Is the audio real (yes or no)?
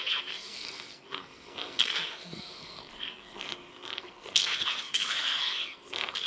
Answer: no